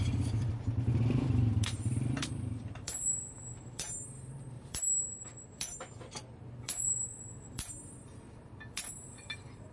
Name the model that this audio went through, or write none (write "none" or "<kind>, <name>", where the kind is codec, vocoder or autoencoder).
vocoder, BigVGAN v2